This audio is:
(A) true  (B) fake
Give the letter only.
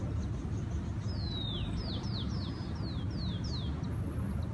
A